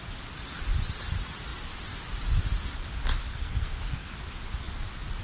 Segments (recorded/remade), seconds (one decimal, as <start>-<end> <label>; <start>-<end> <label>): 0.0-3.3 recorded; 3.3-4.2 remade; 4.2-5.2 recorded